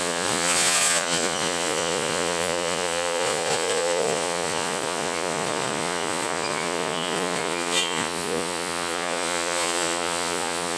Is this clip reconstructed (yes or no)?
yes